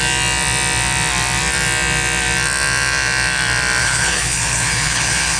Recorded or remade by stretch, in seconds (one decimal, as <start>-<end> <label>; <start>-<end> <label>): 0.0-3.8 recorded; 3.8-5.4 remade